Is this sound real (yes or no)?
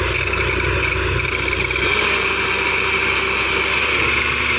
yes